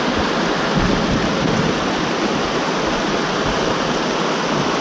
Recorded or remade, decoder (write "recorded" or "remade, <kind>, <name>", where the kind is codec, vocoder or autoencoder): recorded